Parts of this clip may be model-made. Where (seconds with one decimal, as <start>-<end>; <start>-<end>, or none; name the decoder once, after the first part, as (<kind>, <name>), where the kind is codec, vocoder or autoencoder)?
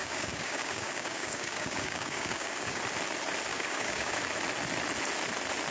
0.0-2.8 (codec, DAC); 3.5-4.2